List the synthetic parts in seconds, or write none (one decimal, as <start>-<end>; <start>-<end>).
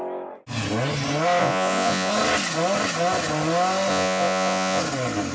1.4-2.1; 3.9-4.8